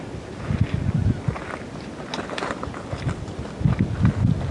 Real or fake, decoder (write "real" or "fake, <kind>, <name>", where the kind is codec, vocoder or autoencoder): real